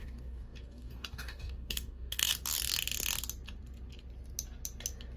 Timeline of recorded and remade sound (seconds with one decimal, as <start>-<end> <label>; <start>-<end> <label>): 0.0-2.3 remade; 2.3-5.2 recorded